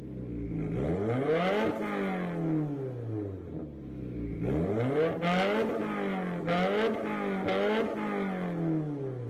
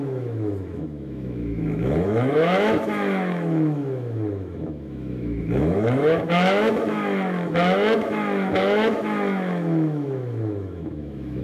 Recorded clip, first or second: first